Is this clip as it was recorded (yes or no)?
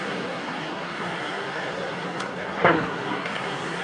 no